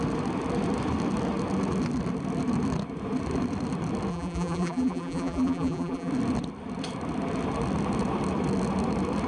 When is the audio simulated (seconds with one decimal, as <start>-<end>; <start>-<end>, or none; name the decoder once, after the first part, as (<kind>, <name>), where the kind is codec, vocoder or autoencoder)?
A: 4.1-6.1 (vocoder, BigVGAN v2)